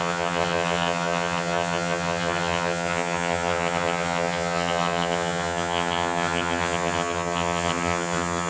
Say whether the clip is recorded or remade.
remade